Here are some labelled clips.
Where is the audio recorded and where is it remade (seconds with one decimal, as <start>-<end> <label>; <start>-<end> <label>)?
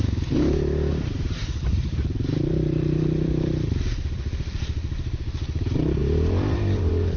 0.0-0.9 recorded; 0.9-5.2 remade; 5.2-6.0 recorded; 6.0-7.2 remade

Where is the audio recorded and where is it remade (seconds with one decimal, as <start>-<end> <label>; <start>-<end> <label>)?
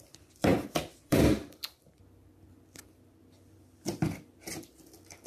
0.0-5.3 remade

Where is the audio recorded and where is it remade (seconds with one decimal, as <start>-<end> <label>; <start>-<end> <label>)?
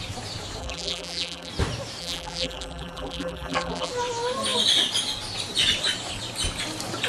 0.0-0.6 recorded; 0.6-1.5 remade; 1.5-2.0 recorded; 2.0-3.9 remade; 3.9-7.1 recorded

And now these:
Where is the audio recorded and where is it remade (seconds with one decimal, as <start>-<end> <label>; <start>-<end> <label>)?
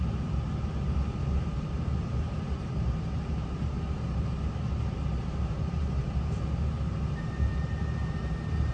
0.0-8.7 remade